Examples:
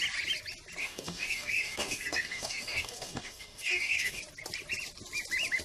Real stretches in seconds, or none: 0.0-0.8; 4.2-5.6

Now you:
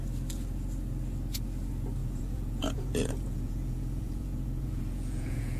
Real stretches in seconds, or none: 0.0-2.0

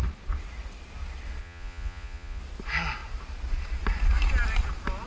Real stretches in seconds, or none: 0.0-1.4; 2.4-5.1

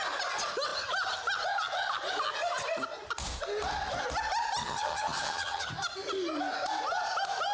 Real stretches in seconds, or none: 0.0-4.6; 5.7-7.5

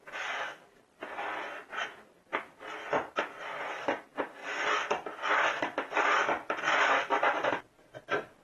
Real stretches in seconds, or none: 0.0-4.4; 8.0-8.4

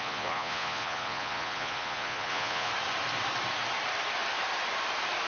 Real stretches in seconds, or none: 2.7-5.3

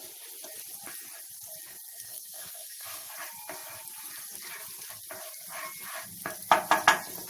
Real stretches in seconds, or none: 0.0-1.9; 3.1-7.3

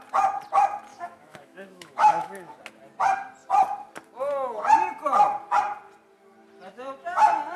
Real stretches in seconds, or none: 0.0-0.9; 2.6-7.6